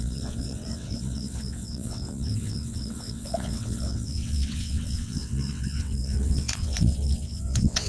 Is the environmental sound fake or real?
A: fake